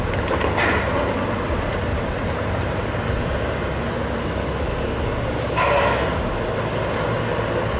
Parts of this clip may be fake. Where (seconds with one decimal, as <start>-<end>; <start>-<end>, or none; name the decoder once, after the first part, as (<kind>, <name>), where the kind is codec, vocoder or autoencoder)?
1.9-3.2 (vocoder, BigVGAN v2)